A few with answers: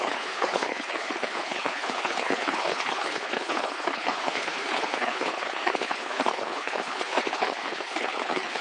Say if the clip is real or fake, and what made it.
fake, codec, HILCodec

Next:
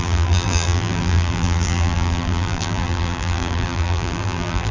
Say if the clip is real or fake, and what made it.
fake, vocoder, BigVGAN v2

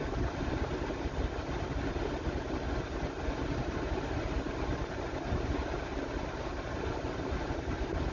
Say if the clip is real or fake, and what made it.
fake, vocoder, BigVGAN v2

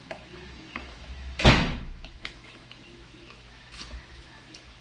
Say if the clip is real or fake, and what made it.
fake, autoencoder, DAC-VAE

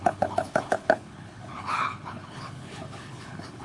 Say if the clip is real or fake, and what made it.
fake, codec, HILCodec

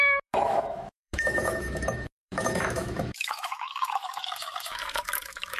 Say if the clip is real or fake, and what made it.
fake, autoencoder, DAC-VAE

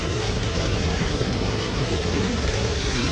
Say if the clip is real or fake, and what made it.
fake, codec, SNAC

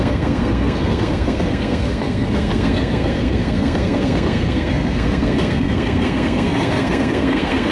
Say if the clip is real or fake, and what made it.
fake, codec, SNAC